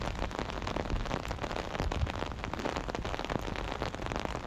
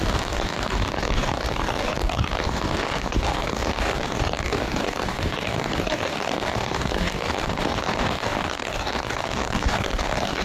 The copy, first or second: second